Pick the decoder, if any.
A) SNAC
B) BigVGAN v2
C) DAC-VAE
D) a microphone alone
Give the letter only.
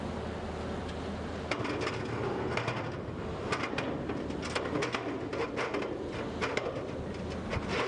D